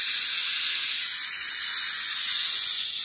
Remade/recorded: remade